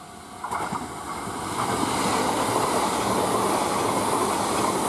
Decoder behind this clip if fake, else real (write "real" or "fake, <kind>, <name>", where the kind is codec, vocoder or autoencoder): real